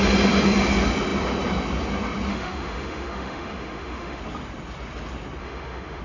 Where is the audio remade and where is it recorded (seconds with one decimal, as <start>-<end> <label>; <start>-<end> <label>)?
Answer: 0.0-2.3 recorded; 2.3-4.2 remade; 4.2-5.4 recorded; 5.4-6.0 remade